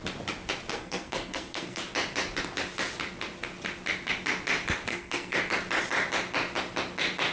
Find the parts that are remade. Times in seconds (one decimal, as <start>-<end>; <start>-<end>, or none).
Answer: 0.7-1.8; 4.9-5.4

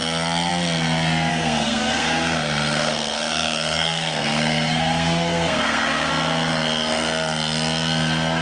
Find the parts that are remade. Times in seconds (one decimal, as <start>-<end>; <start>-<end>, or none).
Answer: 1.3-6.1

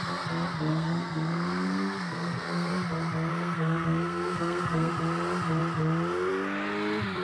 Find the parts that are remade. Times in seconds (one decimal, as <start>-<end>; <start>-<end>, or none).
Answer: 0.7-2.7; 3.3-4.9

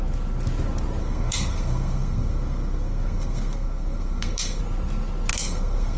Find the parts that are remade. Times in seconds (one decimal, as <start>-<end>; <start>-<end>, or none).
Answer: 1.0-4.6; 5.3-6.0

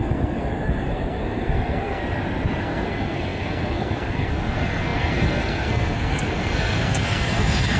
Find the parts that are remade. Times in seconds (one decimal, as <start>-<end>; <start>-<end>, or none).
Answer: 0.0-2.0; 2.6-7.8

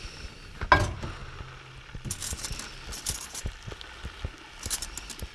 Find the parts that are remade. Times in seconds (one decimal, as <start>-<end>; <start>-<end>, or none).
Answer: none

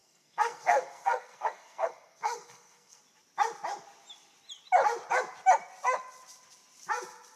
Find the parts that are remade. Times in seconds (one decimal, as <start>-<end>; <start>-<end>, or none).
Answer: 0.0-3.0